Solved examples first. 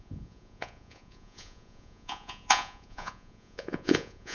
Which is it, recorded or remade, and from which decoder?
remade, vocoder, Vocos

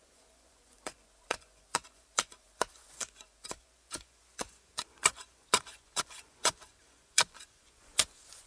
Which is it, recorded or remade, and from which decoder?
remade, vocoder, Vocos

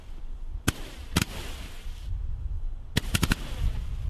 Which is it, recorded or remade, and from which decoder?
recorded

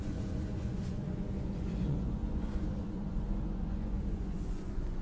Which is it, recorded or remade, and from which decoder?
remade, vocoder, Vocos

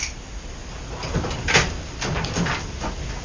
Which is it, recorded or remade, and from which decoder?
recorded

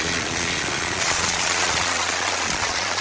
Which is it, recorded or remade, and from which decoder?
remade, vocoder, Vocos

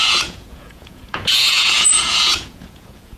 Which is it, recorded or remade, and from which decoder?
remade, vocoder, Vocos